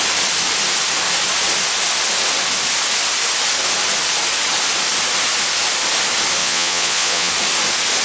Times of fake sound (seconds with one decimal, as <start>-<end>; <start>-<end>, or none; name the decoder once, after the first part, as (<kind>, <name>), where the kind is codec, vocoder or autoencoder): 6.4-7.3 (vocoder, Vocos)